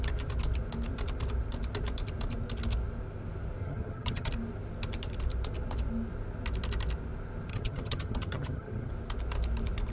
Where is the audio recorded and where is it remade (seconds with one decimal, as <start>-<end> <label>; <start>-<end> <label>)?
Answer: 0.0-3.6 recorded; 3.6-4.3 remade; 4.3-7.5 recorded; 7.5-8.9 remade; 8.9-9.9 recorded